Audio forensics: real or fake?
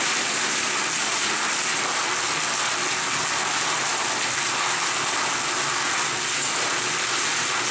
real